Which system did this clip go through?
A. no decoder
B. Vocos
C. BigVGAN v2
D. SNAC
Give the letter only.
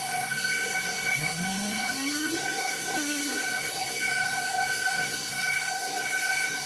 D